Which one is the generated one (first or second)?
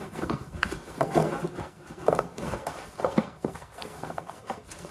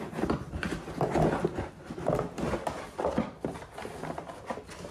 first